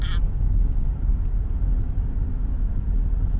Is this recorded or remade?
recorded